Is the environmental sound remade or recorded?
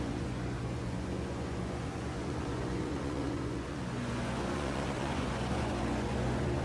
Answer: remade